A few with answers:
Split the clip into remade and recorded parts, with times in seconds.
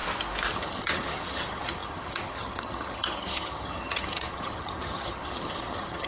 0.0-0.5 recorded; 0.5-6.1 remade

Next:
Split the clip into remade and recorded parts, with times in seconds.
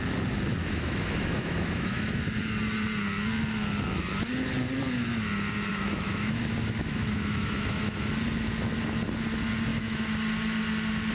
0.0-0.6 recorded; 0.6-2.2 remade; 2.2-5.7 recorded; 5.7-8.1 remade; 8.1-9.7 recorded; 9.7-10.2 remade; 10.2-11.1 recorded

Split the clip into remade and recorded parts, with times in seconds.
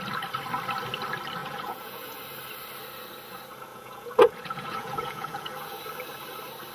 0.0-1.4 recorded; 1.4-2.2 remade; 2.2-3.7 recorded; 3.7-5.8 remade; 5.8-6.7 recorded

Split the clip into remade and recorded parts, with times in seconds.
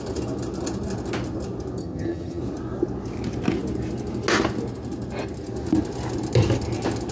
0.0-1.8 recorded; 1.8-2.4 remade; 2.4-7.1 recorded